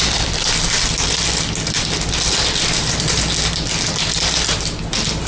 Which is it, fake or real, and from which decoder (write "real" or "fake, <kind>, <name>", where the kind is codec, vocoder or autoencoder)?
real